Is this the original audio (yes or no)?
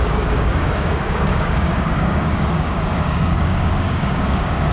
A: no